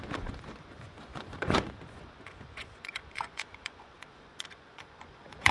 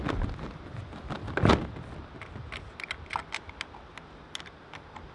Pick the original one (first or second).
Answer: second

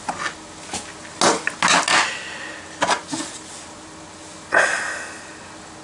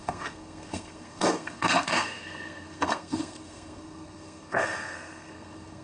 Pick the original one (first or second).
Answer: first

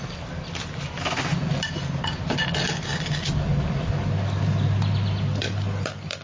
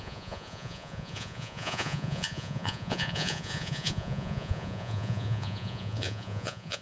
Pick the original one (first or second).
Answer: first